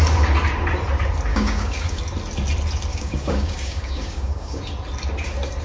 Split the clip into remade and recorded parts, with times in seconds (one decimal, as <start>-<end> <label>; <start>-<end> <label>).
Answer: 0.0-1.3 recorded; 1.3-2.0 remade; 2.0-2.9 recorded; 2.9-4.6 remade; 4.6-5.6 recorded